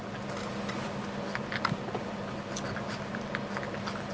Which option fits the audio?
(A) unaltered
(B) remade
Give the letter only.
A